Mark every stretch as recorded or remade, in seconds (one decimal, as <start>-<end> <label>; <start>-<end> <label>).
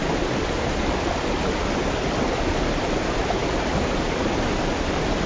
0.0-5.3 recorded